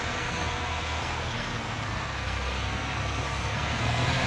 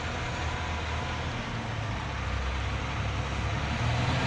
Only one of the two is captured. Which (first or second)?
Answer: second